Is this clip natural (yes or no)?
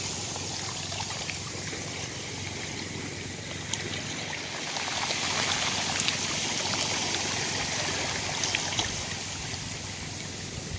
yes